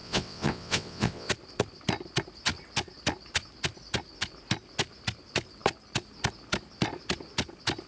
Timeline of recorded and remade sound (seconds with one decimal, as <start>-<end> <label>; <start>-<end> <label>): 0.0-1.3 remade; 1.3-7.9 recorded